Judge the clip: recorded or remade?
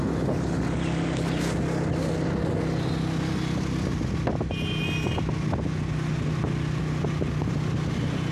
recorded